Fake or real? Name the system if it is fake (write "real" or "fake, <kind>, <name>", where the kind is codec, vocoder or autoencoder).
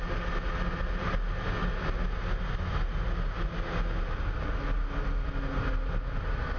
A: real